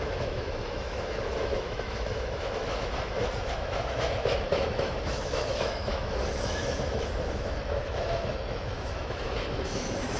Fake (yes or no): yes